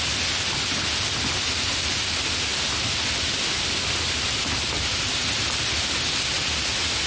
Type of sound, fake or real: real